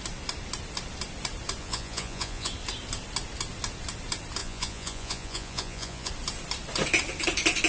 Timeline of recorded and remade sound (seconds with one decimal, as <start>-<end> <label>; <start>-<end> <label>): 0.0-1.6 recorded; 1.6-2.5 remade; 2.5-4.4 recorded; 4.4-6.1 remade; 6.1-7.7 recorded